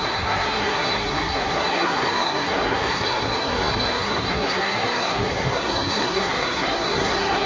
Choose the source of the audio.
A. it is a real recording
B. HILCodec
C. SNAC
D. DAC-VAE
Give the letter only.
C